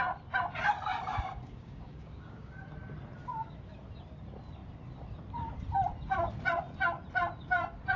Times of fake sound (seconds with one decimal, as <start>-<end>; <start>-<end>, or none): 1.1-2.6